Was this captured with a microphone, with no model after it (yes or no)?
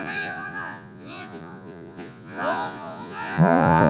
no